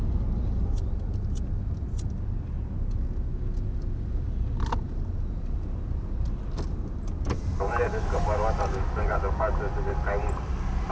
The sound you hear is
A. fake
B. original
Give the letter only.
B